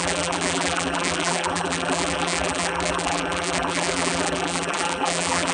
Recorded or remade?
remade